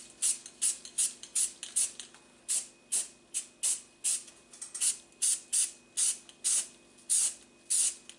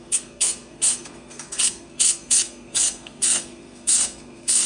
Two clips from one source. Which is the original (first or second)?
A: first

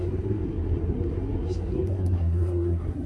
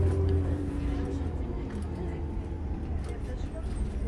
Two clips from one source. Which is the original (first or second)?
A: second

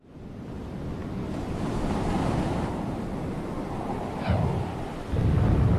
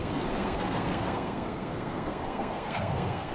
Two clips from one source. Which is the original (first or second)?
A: first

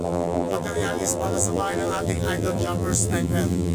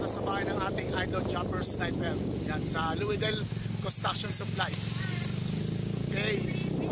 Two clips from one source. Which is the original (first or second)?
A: second